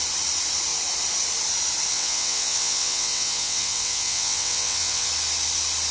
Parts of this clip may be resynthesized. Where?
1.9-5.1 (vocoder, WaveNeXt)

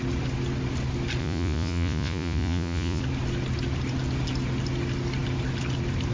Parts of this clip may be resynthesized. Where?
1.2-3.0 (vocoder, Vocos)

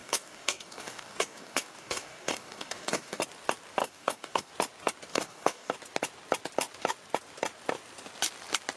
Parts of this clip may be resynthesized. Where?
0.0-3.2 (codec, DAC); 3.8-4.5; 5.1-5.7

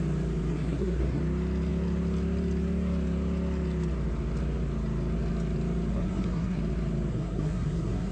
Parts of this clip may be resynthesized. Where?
0.5-1.2 (codec, SNAC); 5.9-6.6; 7.1-8.1

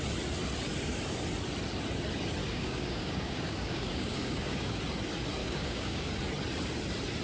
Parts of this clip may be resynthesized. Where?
2.4-4.8 (codec, DAC); 5.4-6.1